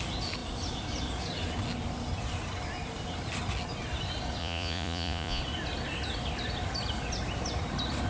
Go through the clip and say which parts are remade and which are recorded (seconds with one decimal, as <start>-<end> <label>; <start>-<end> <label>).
0.0-4.4 recorded; 4.4-5.4 remade; 5.4-8.1 recorded